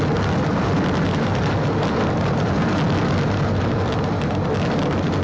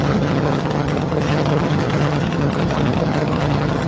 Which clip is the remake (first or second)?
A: second